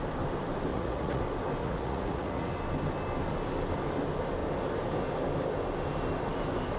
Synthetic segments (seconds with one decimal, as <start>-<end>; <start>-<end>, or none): 0.7-1.2; 1.6-2.5